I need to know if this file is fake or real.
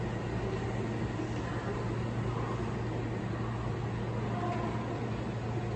real